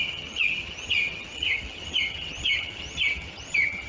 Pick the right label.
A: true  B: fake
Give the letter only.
B